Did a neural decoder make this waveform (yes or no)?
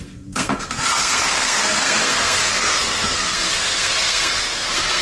yes